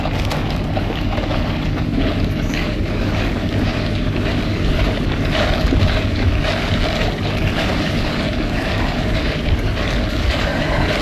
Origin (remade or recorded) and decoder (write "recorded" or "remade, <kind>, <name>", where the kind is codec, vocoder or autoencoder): remade, codec, DAC